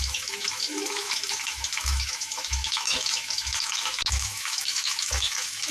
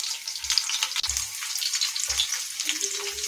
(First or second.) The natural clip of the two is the second